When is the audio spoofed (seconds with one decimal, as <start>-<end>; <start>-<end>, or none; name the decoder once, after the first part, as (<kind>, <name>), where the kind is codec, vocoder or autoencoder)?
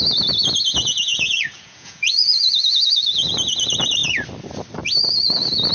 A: 1.1-3.3 (vocoder, Vocos)